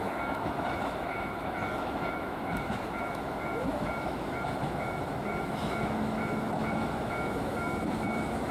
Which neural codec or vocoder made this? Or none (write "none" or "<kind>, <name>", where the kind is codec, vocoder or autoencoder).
autoencoder, DAC-VAE